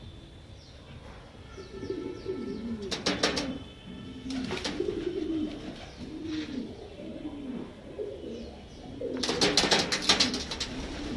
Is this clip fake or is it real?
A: real